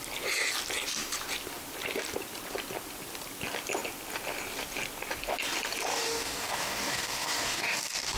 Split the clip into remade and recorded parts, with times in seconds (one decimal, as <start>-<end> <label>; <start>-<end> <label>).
0.0-5.9 recorded; 5.9-8.2 remade